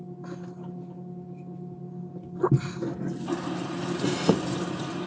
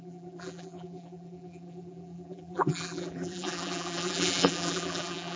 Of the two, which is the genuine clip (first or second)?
first